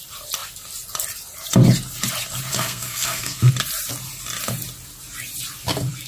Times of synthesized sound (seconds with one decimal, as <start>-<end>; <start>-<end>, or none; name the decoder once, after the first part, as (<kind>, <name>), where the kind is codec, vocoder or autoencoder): 2.5-3.5 (codec, SNAC)